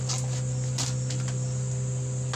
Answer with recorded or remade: recorded